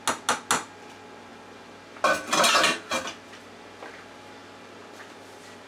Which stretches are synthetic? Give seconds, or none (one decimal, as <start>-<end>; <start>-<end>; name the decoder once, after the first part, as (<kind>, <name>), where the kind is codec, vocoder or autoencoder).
none